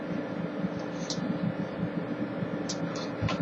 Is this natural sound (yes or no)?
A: yes